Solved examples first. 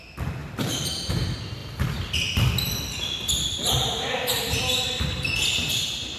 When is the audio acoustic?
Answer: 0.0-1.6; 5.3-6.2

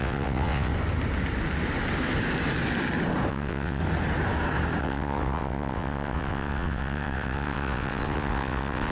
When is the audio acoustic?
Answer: 0.7-3.3; 3.8-4.8

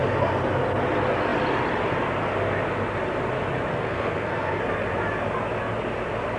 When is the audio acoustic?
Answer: 0.0-3.7; 4.6-6.4

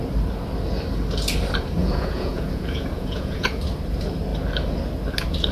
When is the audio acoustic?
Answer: 0.0-1.8; 3.6-5.5

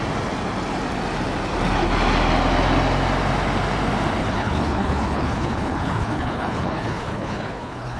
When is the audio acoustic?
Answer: 0.0-4.2

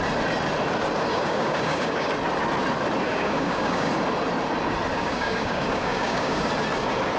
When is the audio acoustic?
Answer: 0.0-1.1; 2.1-3.1; 3.9-4.9; 6.5-7.2

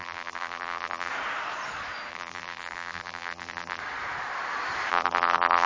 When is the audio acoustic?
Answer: 1.1-2.1; 3.8-4.9